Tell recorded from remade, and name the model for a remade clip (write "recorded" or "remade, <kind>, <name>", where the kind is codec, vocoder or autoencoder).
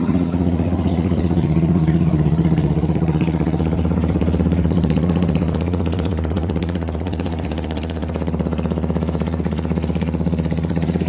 remade, vocoder, Vocos